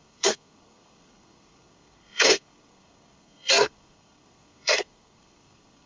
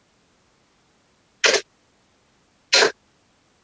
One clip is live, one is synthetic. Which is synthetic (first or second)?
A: first